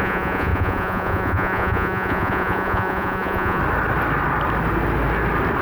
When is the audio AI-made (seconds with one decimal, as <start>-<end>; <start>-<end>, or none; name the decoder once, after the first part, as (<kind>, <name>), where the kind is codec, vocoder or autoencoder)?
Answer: 0.0-3.6 (vocoder, Vocos)

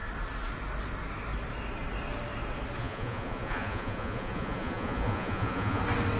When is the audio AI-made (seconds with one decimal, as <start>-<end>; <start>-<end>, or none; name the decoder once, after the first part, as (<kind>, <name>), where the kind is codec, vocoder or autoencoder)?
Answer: 2.8-5.8 (vocoder, Vocos)

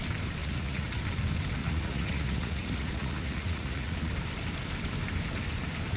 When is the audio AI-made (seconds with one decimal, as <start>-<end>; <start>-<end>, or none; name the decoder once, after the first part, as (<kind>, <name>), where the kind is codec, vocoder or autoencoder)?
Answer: 0.4-1.0 (vocoder, Vocos); 1.6-4.1

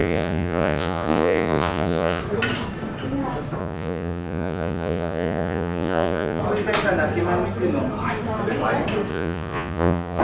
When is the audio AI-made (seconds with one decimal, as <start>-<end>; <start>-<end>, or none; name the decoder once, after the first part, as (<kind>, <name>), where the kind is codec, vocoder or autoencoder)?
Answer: 0.0-2.2 (vocoder, Vocos); 3.6-6.4; 9.1-10.2